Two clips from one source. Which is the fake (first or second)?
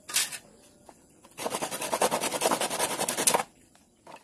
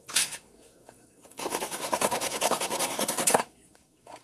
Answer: second